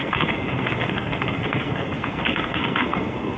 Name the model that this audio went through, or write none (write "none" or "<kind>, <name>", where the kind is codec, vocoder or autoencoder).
codec, SNAC